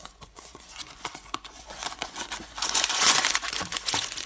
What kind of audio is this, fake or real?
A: fake